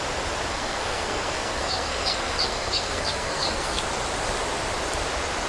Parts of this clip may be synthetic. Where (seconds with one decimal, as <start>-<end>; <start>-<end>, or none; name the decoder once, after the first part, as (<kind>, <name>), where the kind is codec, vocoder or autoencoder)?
0.5-3.8 (codec, SNAC)